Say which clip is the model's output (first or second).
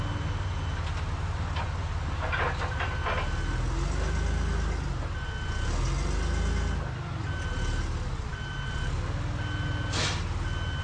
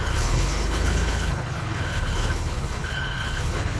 second